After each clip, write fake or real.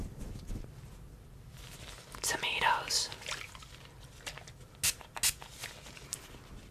real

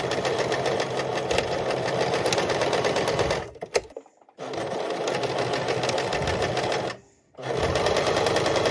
real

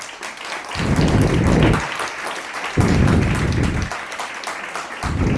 real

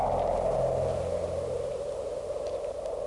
real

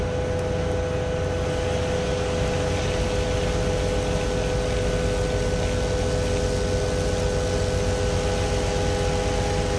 real